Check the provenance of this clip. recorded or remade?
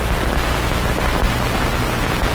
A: recorded